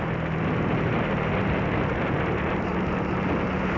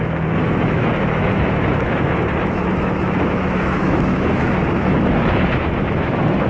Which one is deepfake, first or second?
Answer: second